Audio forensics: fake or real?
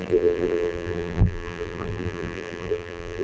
fake